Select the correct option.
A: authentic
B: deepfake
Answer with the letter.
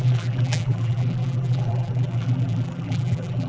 B